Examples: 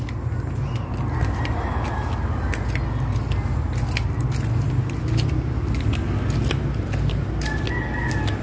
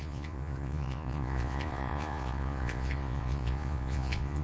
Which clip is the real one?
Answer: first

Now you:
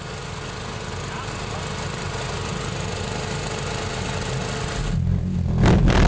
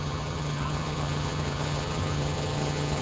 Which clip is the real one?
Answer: first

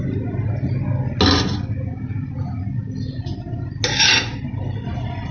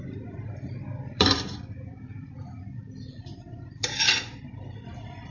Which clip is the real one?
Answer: first